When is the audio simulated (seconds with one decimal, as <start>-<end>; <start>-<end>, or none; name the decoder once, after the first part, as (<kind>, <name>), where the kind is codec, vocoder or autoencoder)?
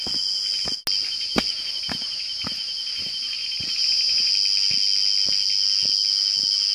3.4-4.3 (vocoder, BigVGAN v2)